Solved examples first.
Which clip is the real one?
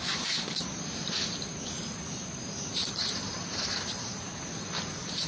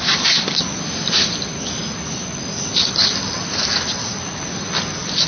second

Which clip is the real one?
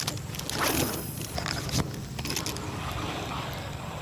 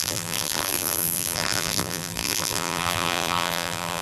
first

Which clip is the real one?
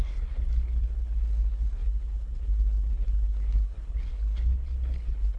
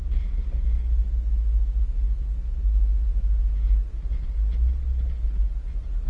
second